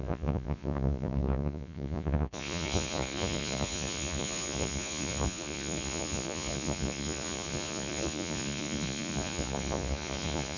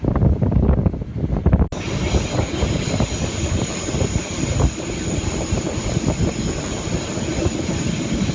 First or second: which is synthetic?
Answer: first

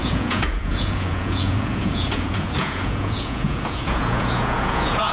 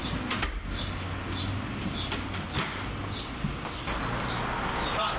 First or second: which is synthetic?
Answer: first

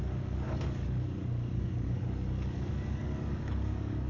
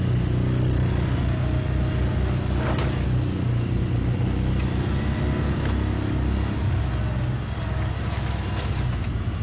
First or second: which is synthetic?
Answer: first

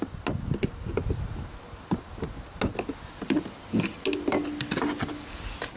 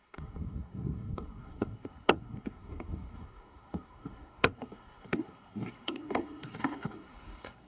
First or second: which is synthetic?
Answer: second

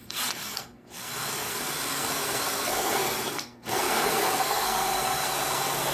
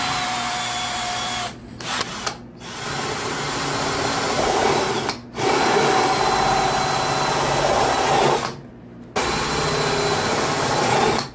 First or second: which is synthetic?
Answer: first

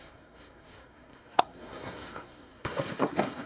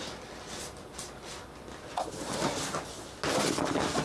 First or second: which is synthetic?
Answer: first